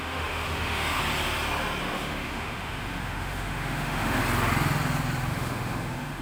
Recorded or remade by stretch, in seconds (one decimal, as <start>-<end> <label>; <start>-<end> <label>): 0.0-1.0 remade; 1.0-1.8 recorded; 1.8-4.2 remade; 4.2-5.3 recorded; 5.3-6.2 remade